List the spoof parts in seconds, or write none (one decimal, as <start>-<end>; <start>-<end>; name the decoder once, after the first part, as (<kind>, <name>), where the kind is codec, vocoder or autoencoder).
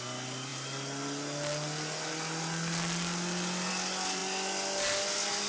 none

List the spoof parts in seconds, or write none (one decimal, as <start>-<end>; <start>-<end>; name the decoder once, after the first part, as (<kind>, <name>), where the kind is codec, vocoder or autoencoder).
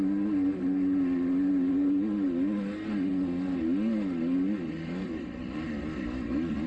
none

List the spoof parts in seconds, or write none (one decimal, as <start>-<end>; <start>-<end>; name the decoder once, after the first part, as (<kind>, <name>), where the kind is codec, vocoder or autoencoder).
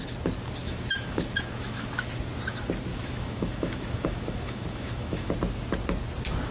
0.6-2.1 (autoencoder, DAC-VAE); 2.9-5.3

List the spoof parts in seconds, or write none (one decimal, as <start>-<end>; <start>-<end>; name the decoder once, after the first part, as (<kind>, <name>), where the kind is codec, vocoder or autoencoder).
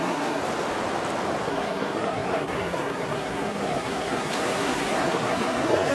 0.0-0.4 (codec, SNAC); 1.4-5.9